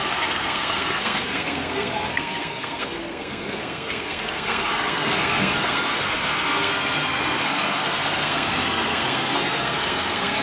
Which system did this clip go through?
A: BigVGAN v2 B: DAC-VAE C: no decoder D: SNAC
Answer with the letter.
D